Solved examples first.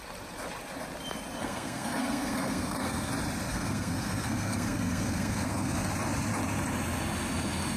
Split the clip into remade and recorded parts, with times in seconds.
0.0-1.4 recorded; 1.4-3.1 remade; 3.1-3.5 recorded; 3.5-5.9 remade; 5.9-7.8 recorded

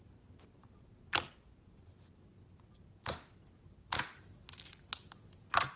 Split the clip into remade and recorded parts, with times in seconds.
0.0-5.8 recorded

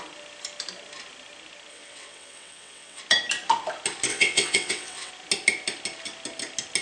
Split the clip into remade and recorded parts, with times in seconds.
0.0-1.7 recorded; 1.7-3.0 remade; 3.0-4.1 recorded; 4.1-5.1 remade; 5.1-6.8 recorded

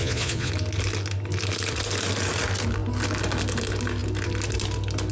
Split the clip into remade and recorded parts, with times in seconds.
0.0-0.5 remade; 0.5-5.1 recorded

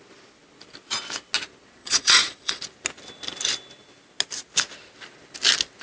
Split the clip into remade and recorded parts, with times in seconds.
0.0-1.8 recorded; 1.8-2.6 remade; 2.6-5.8 recorded

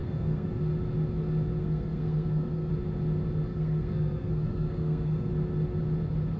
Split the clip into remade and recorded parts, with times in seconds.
0.0-0.6 remade; 0.6-1.6 recorded; 1.6-2.7 remade; 2.7-3.5 recorded; 3.5-5.3 remade; 5.3-6.4 recorded

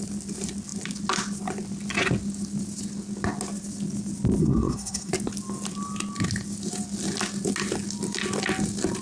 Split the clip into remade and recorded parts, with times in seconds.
0.0-4.4 recorded; 4.4-5.1 remade; 5.1-9.0 recorded

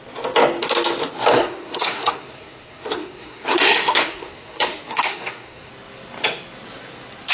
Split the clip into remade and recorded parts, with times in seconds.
0.0-1.3 recorded; 1.3-5.7 remade; 5.7-7.3 recorded